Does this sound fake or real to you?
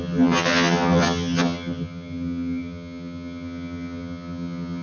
fake